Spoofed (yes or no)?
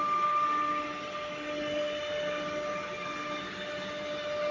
no